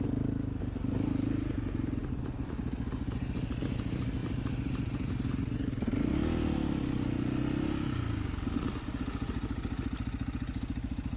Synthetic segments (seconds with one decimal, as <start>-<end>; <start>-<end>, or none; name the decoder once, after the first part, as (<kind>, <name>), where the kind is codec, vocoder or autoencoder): none